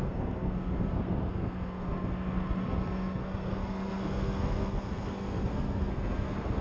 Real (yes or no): no